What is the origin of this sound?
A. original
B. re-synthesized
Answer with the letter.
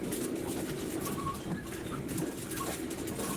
A